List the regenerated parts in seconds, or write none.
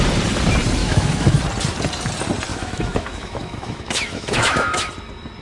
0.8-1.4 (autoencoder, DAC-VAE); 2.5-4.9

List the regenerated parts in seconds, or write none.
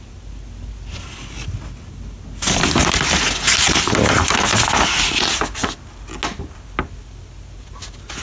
none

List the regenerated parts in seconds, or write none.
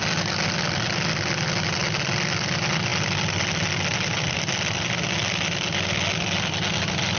none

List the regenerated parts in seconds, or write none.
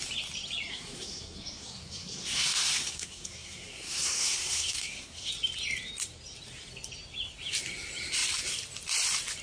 0.7-5.3 (codec, SNAC)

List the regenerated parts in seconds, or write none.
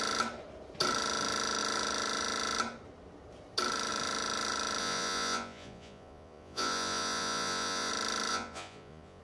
4.8-7.9 (vocoder, Vocos); 8.3-9.2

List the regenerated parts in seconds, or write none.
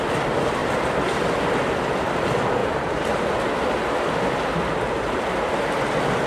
0.6-1.2 (vocoder, BigVGAN v2); 2.6-3.8; 4.5-5.5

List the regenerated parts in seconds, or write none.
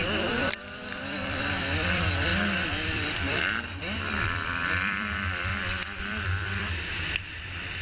0.0-2.3 (vocoder, BigVGAN v2); 2.9-5.5; 6.0-7.8